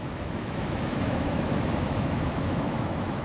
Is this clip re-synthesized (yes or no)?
yes